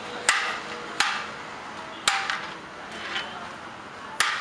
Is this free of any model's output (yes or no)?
yes